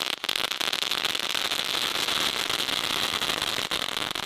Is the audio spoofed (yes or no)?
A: no